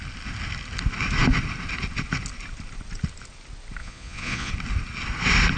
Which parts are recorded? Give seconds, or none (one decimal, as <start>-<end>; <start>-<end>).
0.0-3.8; 4.5-5.6